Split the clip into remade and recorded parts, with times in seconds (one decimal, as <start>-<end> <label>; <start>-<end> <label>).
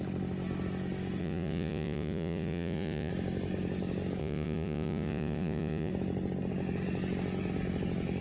0.0-1.2 recorded; 1.2-3.1 remade; 3.1-4.2 recorded; 4.2-5.9 remade; 5.9-8.2 recorded